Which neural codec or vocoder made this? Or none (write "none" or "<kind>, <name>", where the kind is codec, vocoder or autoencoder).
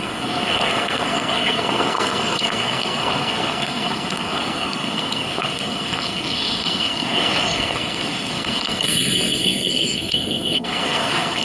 codec, SNAC